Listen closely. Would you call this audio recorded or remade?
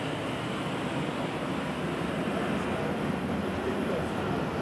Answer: recorded